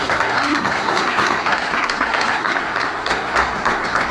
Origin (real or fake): fake